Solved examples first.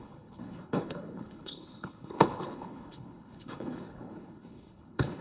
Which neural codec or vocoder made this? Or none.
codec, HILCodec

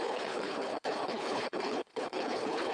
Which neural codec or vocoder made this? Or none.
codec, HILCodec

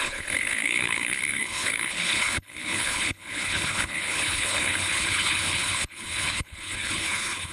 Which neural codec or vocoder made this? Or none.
codec, HILCodec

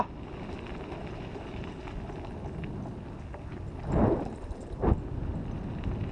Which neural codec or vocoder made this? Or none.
none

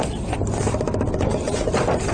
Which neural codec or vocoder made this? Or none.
none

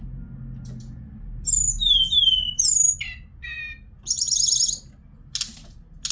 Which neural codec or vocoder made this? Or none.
none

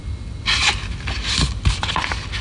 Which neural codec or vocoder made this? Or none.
none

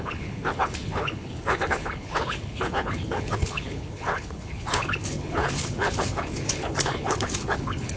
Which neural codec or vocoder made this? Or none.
codec, HILCodec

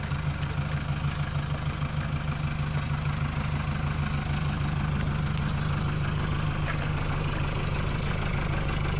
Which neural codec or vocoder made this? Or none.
none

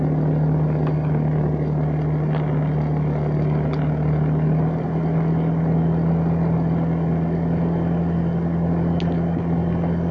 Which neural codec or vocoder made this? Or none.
none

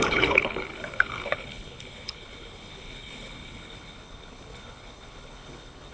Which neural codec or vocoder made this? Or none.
codec, HILCodec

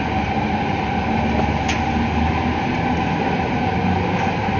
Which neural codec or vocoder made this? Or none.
none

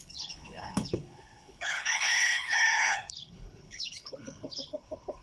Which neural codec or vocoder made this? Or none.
codec, HILCodec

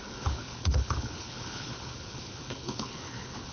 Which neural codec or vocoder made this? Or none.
codec, HILCodec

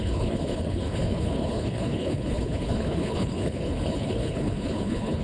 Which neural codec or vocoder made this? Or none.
codec, HILCodec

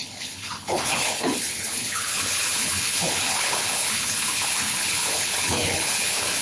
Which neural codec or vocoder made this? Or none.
codec, HILCodec